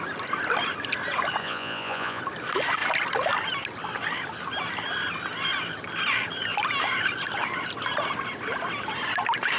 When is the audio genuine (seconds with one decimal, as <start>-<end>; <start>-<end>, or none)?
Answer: 0.0-1.4; 2.2-9.6